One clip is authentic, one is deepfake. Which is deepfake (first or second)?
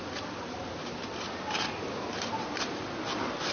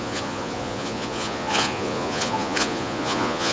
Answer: second